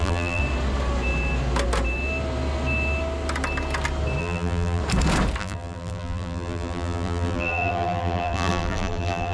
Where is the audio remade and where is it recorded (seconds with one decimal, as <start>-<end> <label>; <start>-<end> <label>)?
0.0-0.4 remade; 0.4-4.2 recorded; 4.2-4.8 remade; 4.8-5.4 recorded; 5.4-9.3 remade